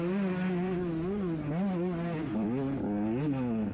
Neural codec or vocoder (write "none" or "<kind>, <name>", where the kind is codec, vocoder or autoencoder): none